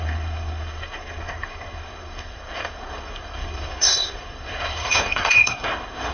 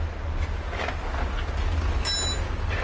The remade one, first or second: first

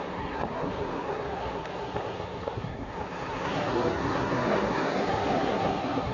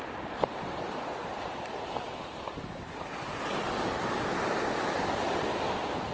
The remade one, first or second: first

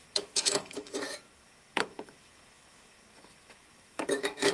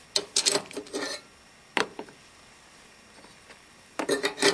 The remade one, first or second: first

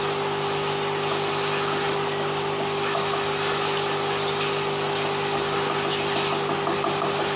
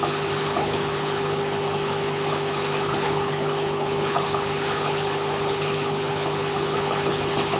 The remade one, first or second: second